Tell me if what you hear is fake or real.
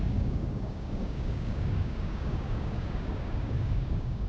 fake